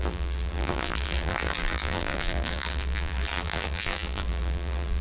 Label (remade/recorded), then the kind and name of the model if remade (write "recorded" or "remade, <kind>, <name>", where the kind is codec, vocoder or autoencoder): remade, vocoder, BigVGAN v2